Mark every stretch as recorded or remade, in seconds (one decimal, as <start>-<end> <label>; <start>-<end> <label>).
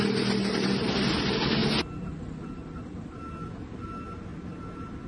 0.0-5.1 recorded